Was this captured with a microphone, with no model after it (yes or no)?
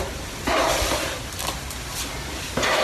yes